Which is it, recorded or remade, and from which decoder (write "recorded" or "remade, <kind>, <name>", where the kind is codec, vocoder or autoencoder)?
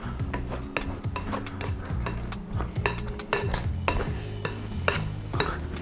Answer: recorded